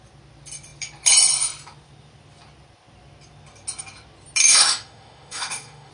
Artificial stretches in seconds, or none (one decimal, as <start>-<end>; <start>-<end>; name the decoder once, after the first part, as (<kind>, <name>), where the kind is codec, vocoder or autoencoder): 4.4-5.9 (autoencoder, DAC-VAE)